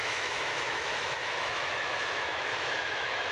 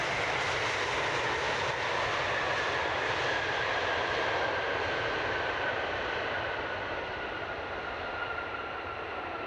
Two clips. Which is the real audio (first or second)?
second